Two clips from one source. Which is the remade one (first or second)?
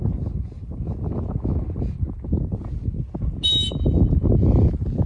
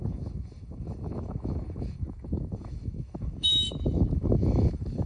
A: second